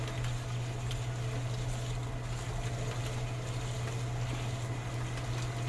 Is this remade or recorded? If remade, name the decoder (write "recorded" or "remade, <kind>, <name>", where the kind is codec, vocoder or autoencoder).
recorded